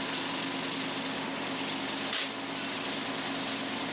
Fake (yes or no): no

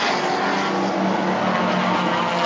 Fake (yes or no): no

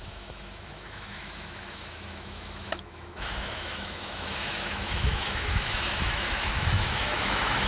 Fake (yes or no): yes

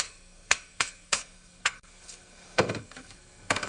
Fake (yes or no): yes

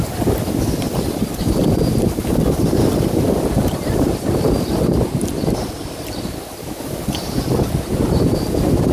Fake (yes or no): no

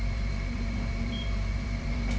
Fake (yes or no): yes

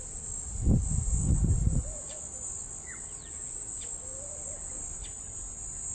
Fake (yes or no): no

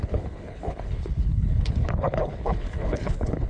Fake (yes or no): yes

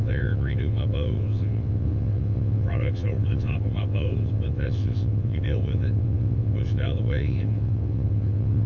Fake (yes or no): yes